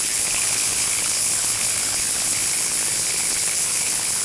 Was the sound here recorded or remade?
remade